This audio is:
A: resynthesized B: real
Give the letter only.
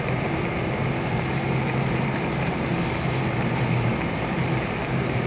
A